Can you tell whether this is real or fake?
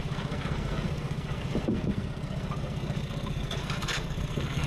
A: fake